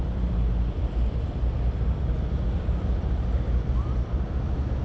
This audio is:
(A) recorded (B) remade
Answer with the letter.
B